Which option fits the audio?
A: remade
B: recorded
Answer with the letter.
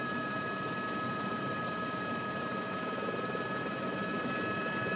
A